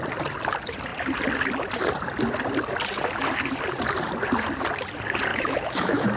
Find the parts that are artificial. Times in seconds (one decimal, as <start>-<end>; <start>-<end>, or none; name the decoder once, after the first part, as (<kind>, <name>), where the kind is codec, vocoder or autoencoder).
5.3-6.2 (autoencoder, DAC-VAE)